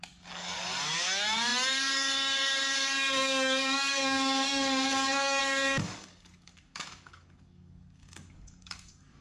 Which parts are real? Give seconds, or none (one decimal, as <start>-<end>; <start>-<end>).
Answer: none